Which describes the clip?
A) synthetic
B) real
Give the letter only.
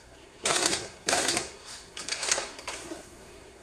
A